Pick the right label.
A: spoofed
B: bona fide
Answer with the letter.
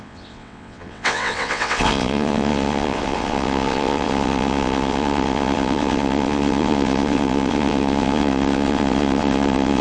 A